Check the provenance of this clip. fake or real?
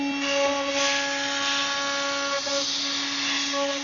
real